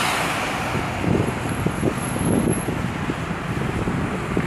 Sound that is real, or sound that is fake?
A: real